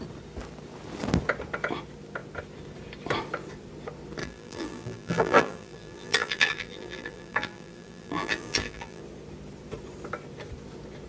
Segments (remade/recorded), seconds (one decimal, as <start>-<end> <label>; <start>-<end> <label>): 0.0-4.2 recorded; 4.2-9.0 remade; 9.0-11.1 recorded